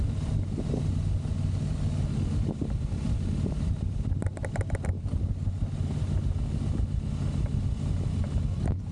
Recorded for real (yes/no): yes